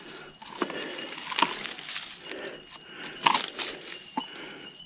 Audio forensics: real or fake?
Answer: real